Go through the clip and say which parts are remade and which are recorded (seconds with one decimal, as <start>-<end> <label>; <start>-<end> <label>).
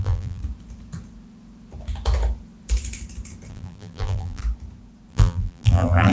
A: 0.0-0.4 remade; 0.4-3.5 recorded; 3.5-4.4 remade; 4.4-5.1 recorded; 5.1-6.1 remade